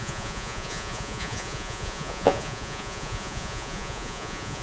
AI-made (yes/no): yes